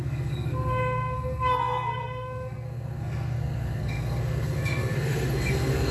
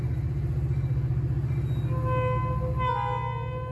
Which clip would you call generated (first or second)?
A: first